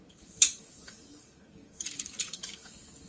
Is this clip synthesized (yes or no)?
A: yes